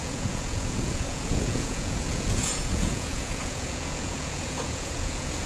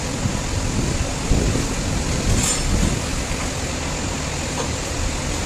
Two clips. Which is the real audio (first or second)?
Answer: second